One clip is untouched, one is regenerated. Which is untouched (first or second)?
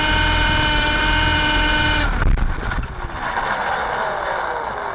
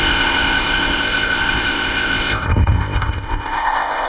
first